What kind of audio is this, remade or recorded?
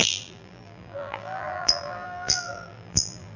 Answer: remade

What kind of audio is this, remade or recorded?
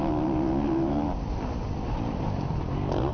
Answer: recorded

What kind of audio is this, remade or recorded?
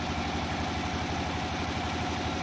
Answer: recorded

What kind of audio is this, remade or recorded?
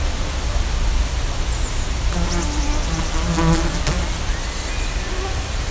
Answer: recorded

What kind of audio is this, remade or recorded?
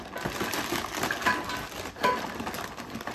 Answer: recorded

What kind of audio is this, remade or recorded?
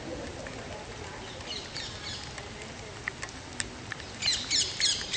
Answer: recorded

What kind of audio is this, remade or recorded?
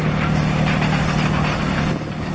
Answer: recorded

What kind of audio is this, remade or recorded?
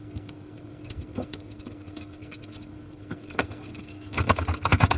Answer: remade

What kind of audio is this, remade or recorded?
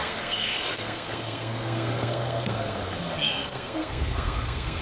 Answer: remade